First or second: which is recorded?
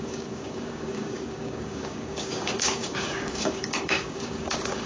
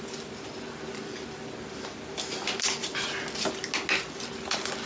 second